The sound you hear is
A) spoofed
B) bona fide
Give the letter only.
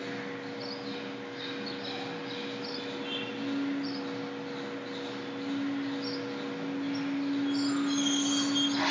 B